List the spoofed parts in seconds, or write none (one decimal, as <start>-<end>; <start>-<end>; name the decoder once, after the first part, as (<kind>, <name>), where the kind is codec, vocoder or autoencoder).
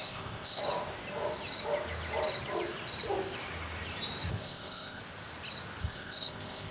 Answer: 0.0-0.6 (codec, ZipCodec); 4.3-5.0; 5.8-6.7